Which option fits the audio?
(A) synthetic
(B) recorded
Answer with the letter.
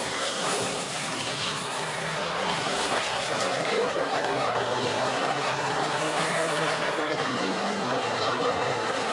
A